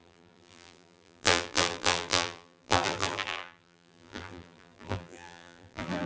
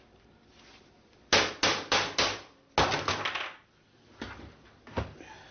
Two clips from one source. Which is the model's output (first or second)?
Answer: first